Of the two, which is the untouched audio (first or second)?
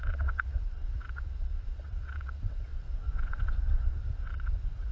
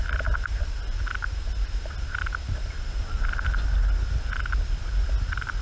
second